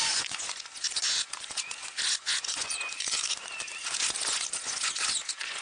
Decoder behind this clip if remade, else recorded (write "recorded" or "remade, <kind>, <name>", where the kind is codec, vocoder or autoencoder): remade, vocoder, Vocos